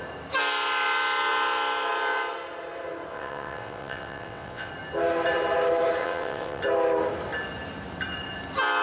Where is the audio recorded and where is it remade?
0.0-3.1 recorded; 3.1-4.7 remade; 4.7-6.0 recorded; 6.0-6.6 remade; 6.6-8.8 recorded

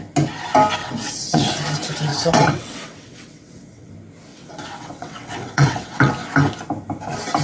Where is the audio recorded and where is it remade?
0.0-0.8 recorded; 0.8-1.5 remade; 1.5-2.1 recorded; 2.1-3.9 remade; 3.9-4.3 recorded; 4.3-6.1 remade; 6.1-7.4 recorded

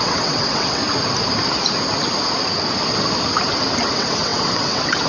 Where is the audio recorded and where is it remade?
0.0-0.8 remade; 0.8-3.9 recorded; 3.9-5.1 remade

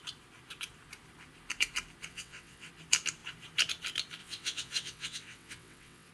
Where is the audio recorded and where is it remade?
0.0-2.1 recorded; 2.1-2.7 remade; 2.7-4.2 recorded; 4.2-6.1 remade

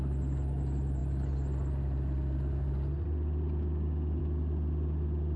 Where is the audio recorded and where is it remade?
0.0-5.4 recorded

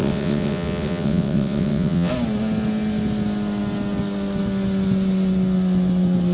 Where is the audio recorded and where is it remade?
0.0-2.1 remade; 2.1-6.3 recorded

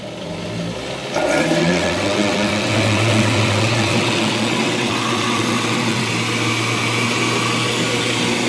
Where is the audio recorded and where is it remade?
0.0-1.6 recorded; 1.6-6.1 remade; 6.1-8.5 recorded

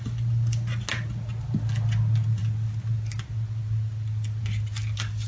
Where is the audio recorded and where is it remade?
0.0-5.3 recorded